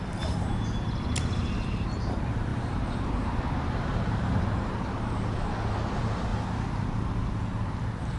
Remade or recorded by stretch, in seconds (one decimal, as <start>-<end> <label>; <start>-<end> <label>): 0.0-0.5 remade; 0.5-1.3 recorded; 1.3-6.3 remade; 6.3-6.8 recorded; 6.8-8.2 remade